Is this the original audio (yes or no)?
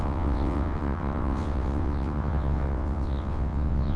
no